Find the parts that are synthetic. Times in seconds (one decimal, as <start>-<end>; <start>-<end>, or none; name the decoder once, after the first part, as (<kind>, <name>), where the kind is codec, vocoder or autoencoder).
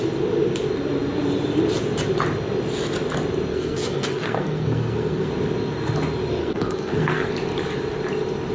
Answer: 3.5-5.3 (codec, SNAC); 6.4-7.3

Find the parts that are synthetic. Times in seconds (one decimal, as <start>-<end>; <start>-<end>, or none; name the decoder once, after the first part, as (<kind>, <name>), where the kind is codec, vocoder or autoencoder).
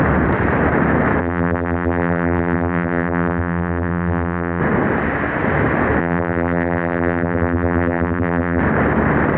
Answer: 1.2-4.6 (vocoder, BigVGAN v2); 6.0-8.6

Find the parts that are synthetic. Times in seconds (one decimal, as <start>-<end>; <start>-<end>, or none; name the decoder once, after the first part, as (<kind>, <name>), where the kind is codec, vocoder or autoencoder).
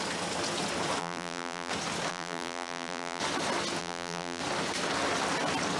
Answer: 1.0-1.7 (vocoder, BigVGAN v2); 2.1-3.2; 3.8-4.4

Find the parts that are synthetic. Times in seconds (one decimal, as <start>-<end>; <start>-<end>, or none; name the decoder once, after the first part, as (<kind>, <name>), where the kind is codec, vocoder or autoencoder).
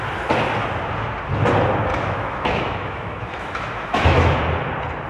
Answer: 1.9-4.4 (autoencoder, DAC-VAE)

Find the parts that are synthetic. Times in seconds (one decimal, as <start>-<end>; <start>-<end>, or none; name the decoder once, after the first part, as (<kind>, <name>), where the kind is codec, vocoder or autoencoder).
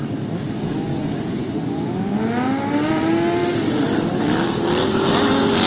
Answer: 0.9-2.0 (vocoder, Vocos)